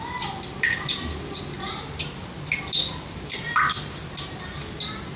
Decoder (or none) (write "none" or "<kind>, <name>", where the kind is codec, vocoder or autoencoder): none